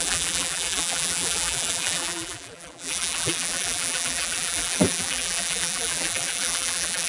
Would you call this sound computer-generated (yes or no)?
yes